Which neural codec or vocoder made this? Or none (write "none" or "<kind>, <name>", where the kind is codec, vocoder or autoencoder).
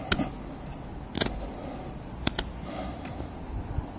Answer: none